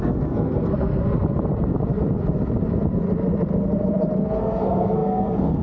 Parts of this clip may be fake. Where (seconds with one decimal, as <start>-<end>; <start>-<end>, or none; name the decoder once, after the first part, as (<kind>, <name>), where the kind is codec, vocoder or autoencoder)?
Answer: 0.0-1.0 (codec, SNAC); 4.4-5.6

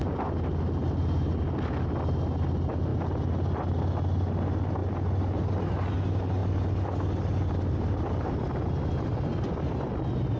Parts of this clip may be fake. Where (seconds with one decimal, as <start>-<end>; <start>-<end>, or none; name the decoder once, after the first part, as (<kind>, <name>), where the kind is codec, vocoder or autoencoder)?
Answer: none

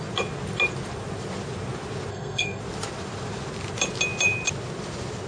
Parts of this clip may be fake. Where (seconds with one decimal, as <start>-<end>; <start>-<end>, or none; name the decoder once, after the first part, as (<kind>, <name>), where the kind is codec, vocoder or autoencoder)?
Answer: 2.1-2.6 (codec, SNAC)

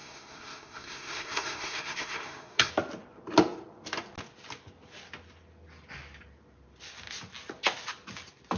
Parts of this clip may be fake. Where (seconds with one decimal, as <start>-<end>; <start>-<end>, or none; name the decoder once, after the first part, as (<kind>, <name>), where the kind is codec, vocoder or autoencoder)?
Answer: 0.0-2.7 (codec, SNAC)

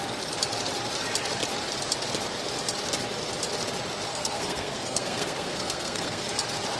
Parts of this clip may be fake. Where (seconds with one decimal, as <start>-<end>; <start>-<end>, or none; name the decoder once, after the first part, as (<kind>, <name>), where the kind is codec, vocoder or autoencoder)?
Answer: 4.1-6.2 (codec, SNAC)

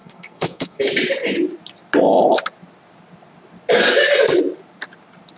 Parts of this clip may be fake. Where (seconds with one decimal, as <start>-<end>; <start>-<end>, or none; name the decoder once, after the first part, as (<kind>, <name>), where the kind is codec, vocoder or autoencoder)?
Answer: 0.0-0.8 (codec, SNAC)

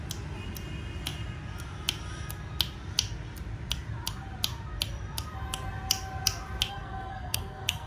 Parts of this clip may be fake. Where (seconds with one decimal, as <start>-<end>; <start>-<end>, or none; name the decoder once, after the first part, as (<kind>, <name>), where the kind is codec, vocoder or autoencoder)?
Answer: 6.7-7.9 (codec, SNAC)

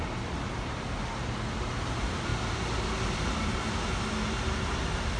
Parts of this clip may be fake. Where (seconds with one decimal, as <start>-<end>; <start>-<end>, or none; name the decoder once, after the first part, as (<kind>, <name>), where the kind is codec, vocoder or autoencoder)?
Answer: none